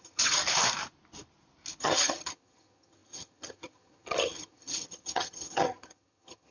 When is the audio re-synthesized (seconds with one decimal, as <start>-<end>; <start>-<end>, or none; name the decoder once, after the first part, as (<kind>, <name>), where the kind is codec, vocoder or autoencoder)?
0.0-0.4 (vocoder, HiFi-GAN); 1.8-6.5